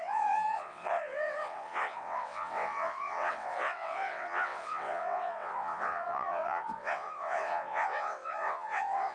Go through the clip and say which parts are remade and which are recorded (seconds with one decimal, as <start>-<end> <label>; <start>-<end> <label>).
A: 0.0-9.1 remade